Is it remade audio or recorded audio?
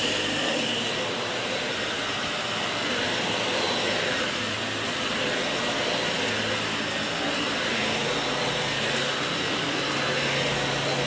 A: recorded